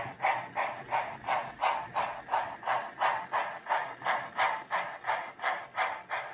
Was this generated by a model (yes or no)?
no